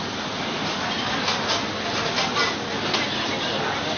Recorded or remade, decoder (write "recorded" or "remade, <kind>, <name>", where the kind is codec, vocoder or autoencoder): recorded